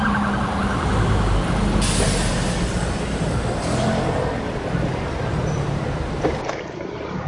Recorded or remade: recorded